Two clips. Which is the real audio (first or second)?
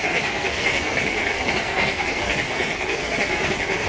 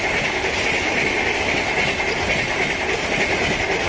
second